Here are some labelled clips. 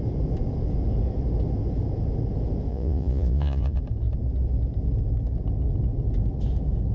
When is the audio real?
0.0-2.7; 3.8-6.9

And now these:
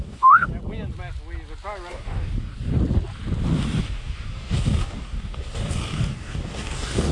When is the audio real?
0.5-1.9; 2.7-3.8